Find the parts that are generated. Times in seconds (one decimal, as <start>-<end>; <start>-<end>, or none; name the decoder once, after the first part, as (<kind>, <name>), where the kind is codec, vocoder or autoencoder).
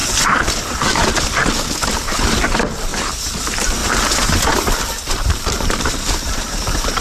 2.1-2.9 (vocoder, BigVGAN v2); 3.4-3.8; 5.1-7.0